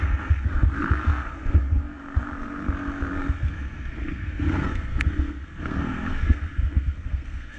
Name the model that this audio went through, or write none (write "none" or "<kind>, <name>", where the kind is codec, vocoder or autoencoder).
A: codec, SNAC